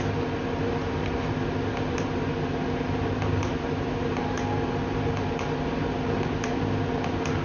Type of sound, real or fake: real